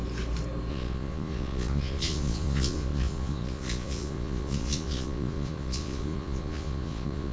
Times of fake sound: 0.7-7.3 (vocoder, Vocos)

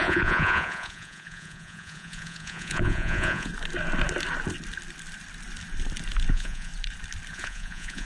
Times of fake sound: 0.0-3.5 (vocoder, Vocos); 6.3-6.7; 7.3-8.0